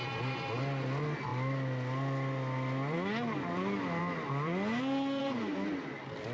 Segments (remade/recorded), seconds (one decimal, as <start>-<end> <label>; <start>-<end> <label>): 0.0-6.3 recorded